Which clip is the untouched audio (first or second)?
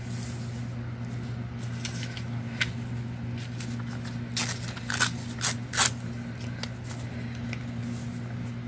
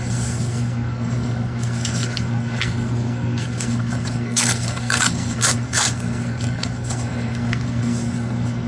first